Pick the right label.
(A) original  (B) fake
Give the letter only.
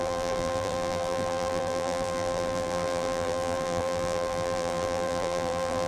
B